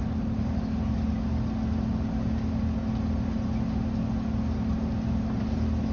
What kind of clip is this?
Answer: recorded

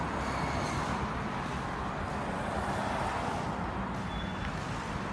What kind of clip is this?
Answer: recorded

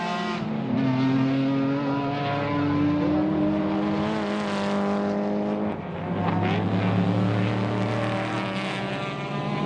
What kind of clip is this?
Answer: recorded